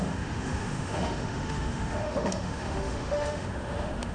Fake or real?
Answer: fake